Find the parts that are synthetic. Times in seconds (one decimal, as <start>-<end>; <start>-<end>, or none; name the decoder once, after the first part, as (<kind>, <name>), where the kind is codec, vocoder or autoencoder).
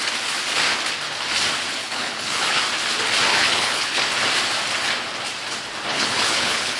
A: 1.8-2.6 (codec, HILCodec); 3.3-4.0; 5.9-6.8